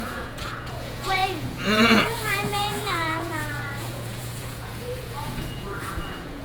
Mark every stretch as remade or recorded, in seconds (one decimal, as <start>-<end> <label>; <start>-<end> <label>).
0.0-6.4 remade